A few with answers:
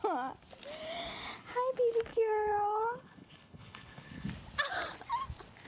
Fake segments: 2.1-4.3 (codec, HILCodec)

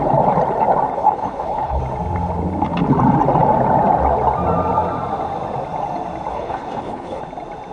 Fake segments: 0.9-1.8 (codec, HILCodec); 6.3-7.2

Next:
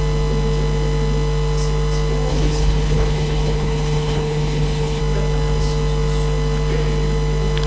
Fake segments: 2.3-5.0 (codec, HILCodec)